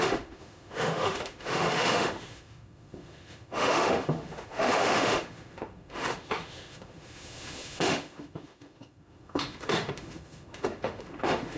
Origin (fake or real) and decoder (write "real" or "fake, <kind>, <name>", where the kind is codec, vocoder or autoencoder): fake, autoencoder, DAC-VAE